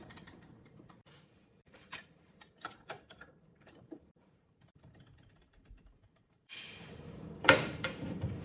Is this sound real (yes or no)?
no